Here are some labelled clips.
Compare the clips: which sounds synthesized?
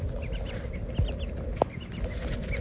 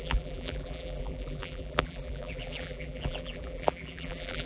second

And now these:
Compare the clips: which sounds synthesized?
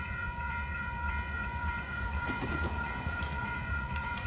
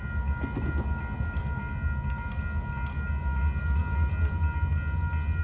first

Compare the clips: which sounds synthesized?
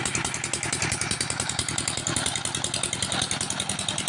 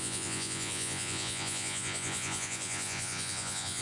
second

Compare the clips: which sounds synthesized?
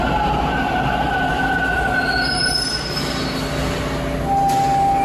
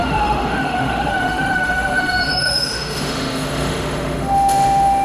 second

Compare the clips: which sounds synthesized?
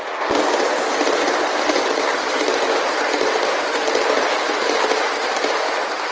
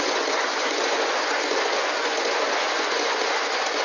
second